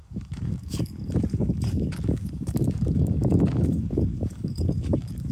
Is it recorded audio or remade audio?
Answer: remade